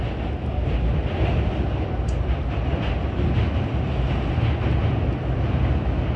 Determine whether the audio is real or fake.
real